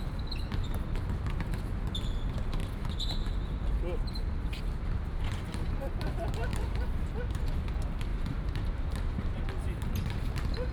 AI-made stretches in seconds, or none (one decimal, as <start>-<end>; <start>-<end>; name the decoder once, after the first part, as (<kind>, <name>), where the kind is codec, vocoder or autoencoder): 6.5-7.4 (vocoder, BigVGAN v2); 8.1-9.4